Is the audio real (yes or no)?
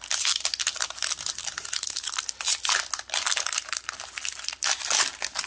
yes